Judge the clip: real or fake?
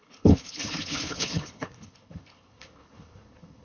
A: fake